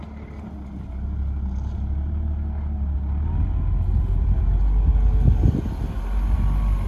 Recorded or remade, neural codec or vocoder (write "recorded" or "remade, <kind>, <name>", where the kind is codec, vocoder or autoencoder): recorded